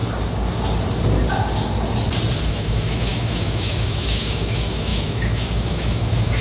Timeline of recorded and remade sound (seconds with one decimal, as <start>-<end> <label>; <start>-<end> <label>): 0.0-2.5 recorded; 2.5-6.4 remade